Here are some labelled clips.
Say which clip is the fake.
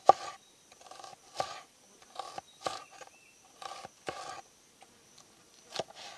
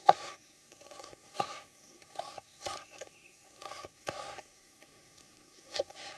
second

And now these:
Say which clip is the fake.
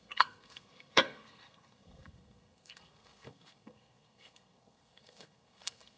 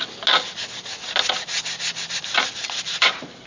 first